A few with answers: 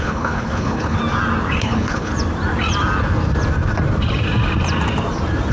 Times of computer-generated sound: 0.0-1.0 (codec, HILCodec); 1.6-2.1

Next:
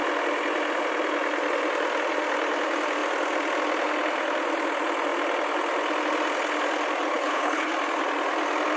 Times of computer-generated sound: 7.1-7.7 (codec, HILCodec)

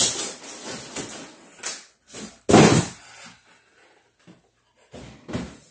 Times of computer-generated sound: none

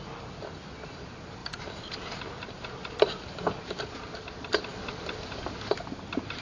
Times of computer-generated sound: none

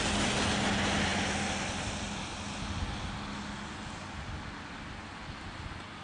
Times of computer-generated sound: none

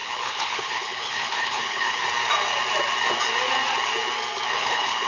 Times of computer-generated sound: 0.0-2.0 (codec, HILCodec); 4.5-5.1

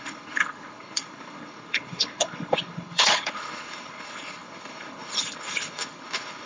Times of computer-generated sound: 0.0-6.5 (codec, HILCodec)

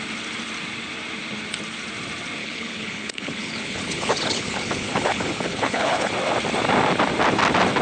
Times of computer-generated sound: 2.4-6.1 (codec, HILCodec)